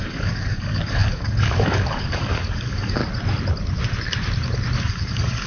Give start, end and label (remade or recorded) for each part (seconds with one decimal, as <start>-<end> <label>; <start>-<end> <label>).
0.0-3.0 remade; 3.0-4.8 recorded; 4.8-5.5 remade